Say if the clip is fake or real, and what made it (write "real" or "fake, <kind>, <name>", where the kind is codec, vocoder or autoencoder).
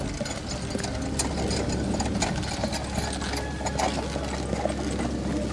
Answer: real